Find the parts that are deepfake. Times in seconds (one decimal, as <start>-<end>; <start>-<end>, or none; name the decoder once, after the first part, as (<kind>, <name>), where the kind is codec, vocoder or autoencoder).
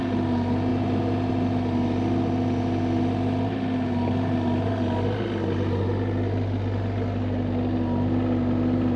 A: none